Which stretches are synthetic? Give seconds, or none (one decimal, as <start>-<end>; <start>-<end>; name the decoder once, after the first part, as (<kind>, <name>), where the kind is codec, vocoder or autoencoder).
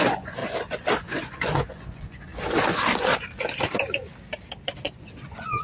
0.0-0.4 (vocoder, Vocos); 1.0-2.3; 4.9-5.6